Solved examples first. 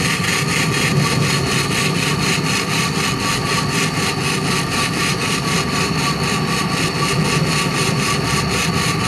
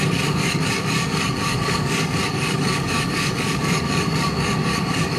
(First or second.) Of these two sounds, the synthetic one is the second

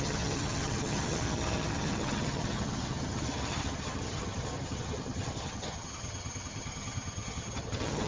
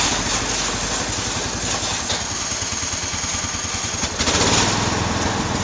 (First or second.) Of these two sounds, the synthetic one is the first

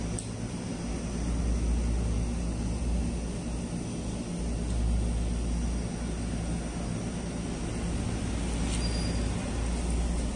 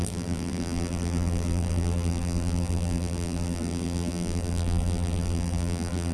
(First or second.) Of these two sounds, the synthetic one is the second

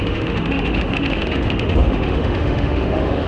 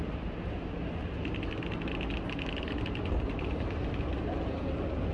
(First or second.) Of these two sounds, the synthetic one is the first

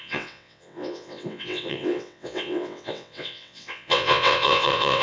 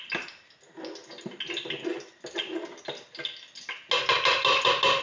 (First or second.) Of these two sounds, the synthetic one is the first